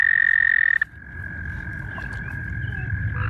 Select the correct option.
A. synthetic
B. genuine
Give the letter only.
B